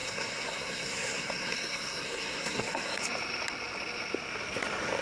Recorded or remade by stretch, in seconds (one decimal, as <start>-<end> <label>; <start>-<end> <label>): 0.0-3.0 remade; 3.0-5.0 recorded